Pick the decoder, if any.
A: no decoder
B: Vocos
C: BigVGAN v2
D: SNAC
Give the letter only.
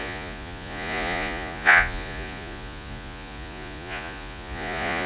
B